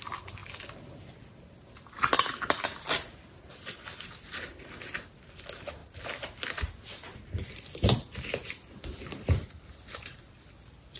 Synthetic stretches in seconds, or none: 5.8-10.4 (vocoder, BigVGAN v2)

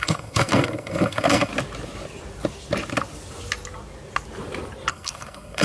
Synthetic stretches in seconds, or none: 0.0-1.5 (codec, SNAC); 4.9-5.6